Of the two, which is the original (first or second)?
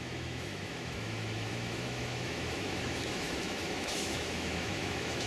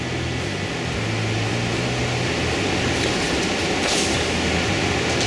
second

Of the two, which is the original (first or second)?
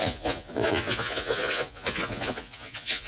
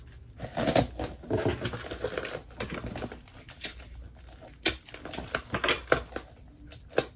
second